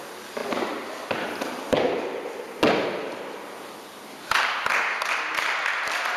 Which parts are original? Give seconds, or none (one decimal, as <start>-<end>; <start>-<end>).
0.0-6.2